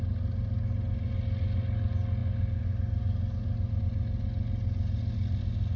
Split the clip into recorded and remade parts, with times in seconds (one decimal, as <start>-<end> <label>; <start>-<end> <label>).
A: 0.0-5.8 recorded

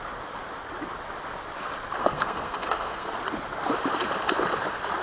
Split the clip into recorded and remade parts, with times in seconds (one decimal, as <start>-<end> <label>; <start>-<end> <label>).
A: 0.0-2.0 recorded; 2.0-3.1 remade; 3.1-5.0 recorded

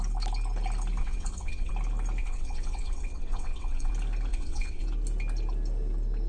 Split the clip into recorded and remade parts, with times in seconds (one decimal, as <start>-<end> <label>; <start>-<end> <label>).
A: 0.0-1.0 recorded; 1.0-1.7 remade; 1.7-2.2 recorded; 2.2-3.9 remade; 3.9-4.3 recorded; 4.3-4.8 remade; 4.8-6.3 recorded

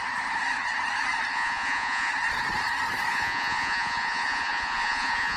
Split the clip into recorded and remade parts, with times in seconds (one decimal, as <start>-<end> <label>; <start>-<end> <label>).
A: 0.0-1.3 recorded; 1.3-2.1 remade; 2.1-3.1 recorded; 3.1-5.4 remade

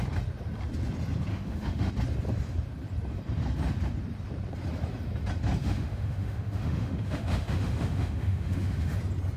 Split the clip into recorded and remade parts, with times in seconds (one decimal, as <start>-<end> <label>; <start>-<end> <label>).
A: 0.0-1.3 recorded; 1.3-1.9 remade; 1.9-5.6 recorded; 5.6-9.0 remade; 9.0-9.4 recorded